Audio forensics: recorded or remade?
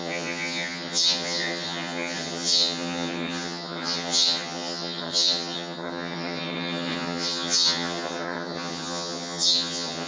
remade